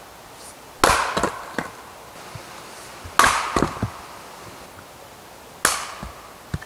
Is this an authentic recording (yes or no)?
yes